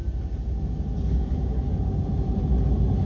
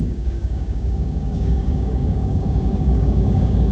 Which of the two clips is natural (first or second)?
first